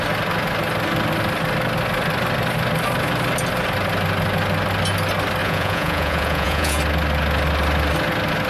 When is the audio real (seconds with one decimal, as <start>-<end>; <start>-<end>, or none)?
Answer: 0.0-5.4; 6.8-8.5